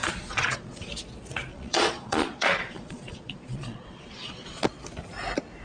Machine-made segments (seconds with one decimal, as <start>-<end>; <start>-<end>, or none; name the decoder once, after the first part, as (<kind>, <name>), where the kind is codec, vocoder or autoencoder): 0.0-0.9 (vocoder, Vocos); 1.5-4.6